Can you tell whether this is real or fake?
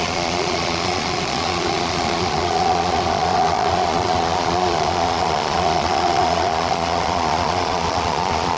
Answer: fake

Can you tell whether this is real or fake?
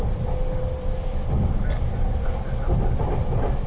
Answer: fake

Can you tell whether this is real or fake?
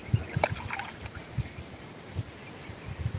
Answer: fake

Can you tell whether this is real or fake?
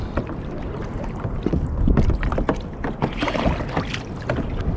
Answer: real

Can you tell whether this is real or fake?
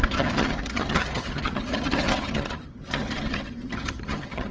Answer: fake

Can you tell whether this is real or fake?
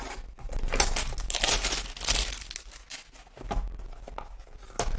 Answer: real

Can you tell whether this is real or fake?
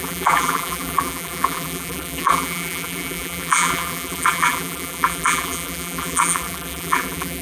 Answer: fake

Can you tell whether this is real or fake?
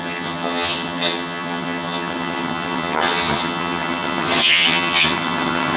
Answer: fake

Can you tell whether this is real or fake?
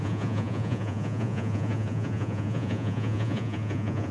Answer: fake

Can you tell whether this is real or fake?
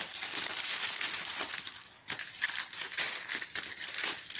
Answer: real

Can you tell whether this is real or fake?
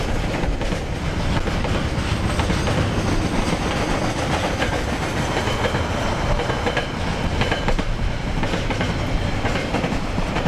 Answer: real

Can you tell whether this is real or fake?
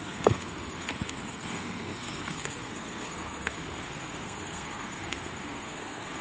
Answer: fake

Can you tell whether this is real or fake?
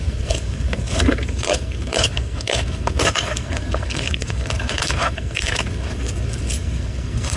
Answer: fake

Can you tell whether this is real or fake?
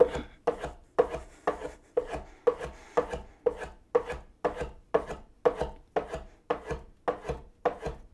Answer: real